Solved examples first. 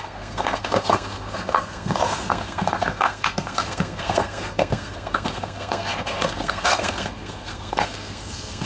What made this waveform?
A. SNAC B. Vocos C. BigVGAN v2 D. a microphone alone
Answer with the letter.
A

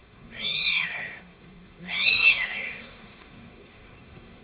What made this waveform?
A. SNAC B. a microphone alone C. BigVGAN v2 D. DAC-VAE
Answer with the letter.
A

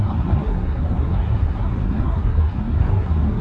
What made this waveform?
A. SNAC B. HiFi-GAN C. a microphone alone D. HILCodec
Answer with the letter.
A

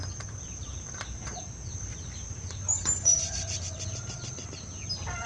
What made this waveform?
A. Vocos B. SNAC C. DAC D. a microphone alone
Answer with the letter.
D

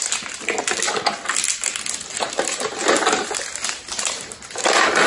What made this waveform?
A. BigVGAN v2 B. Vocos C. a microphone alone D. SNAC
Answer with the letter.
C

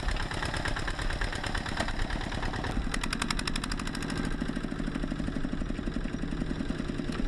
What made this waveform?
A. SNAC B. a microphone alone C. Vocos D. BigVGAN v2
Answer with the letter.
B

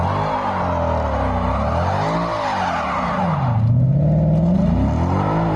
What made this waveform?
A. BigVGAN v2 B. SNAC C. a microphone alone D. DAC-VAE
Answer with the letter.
C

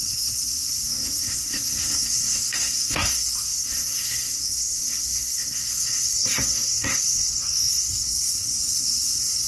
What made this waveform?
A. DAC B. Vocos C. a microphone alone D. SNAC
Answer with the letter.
D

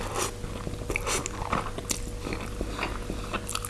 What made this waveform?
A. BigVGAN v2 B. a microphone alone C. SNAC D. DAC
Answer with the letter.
B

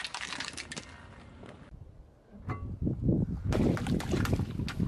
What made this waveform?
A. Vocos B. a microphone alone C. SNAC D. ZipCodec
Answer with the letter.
B